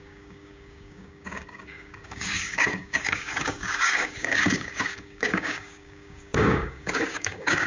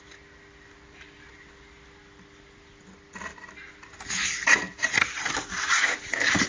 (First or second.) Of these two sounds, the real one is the second